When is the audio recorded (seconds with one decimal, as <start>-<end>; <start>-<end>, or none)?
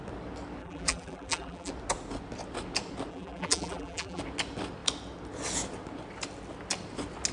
0.0-0.6; 1.7-3.1; 4.2-7.3